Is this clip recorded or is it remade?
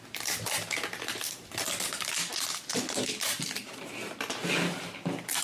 recorded